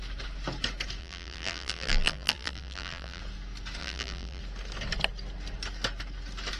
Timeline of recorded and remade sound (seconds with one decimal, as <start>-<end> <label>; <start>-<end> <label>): 0.0-1.0 recorded; 1.0-3.2 remade; 3.2-3.8 recorded; 3.8-4.4 remade; 4.4-6.6 recorded